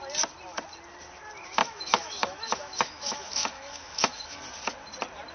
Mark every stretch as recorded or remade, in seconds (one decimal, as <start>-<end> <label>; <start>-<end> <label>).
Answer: 0.0-1.6 recorded; 1.6-4.4 remade; 4.4-5.3 recorded